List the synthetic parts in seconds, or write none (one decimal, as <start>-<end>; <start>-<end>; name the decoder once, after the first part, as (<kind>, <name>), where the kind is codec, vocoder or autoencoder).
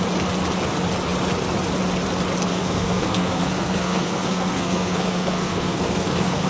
2.5-6.5 (codec, SNAC)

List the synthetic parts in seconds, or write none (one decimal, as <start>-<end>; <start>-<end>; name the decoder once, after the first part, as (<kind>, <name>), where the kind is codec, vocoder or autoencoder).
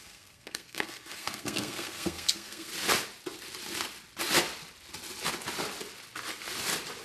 0.0-2.7 (codec, SNAC)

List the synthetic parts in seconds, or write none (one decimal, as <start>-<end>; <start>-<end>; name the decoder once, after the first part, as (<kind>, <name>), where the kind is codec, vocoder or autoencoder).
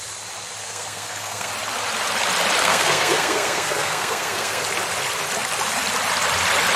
0.6-1.5 (codec, SNAC); 2.6-4.6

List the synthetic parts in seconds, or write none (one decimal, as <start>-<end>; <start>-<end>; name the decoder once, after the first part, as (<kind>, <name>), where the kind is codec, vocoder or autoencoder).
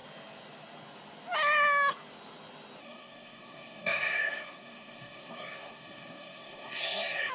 2.8-7.3 (codec, SNAC)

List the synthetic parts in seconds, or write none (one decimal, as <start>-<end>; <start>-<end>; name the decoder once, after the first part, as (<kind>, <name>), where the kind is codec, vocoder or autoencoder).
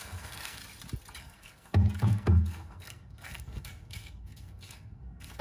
0.0-0.6 (codec, SNAC); 1.2-5.4